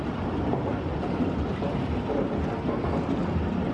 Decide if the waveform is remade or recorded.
recorded